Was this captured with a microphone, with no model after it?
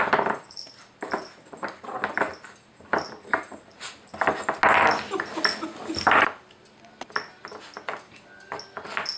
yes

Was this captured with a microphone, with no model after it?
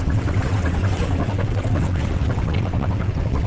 no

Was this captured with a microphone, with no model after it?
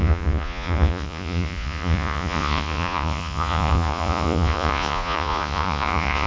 no